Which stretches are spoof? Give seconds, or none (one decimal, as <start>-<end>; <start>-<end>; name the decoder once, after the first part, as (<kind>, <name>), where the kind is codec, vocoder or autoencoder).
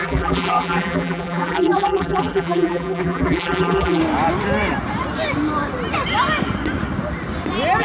0.0-4.0 (vocoder, BigVGAN v2)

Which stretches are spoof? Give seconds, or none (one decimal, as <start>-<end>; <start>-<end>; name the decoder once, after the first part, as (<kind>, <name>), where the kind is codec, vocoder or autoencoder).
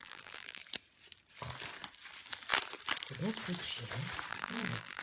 0.0-0.6 (vocoder, BigVGAN v2); 4.3-5.0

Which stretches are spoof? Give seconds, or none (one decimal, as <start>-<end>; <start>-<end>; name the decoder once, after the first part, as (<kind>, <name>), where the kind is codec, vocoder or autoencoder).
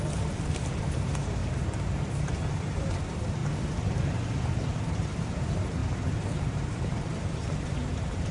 0.0-5.8 (vocoder, BigVGAN v2); 6.4-8.3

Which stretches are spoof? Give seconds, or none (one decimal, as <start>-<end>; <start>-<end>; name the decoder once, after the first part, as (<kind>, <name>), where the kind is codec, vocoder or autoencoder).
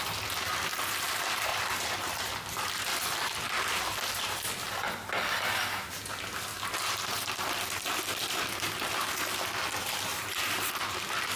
1.5-2.1 (vocoder, BigVGAN v2); 10.1-10.7